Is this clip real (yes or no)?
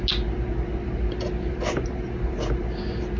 yes